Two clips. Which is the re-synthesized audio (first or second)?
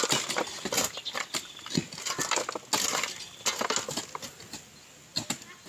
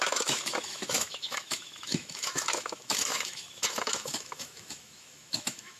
second